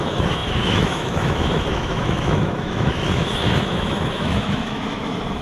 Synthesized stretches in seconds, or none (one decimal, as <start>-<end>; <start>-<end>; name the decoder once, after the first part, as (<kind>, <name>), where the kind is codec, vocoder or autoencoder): 0.0-5.4 (autoencoder, DAC-VAE)